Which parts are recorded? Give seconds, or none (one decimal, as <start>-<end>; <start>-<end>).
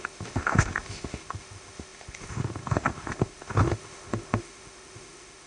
none